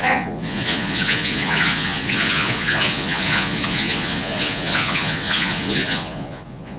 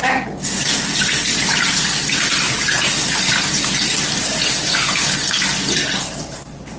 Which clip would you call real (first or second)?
second